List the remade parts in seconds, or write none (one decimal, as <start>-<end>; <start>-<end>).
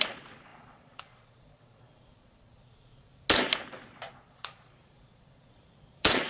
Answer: 0.0-3.1; 4.2-6.3